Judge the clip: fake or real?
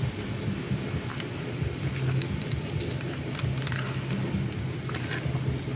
real